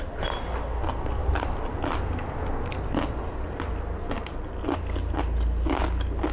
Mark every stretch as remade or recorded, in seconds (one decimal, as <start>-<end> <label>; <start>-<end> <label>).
0.0-6.3 recorded